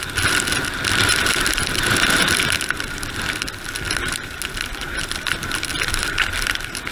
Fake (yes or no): no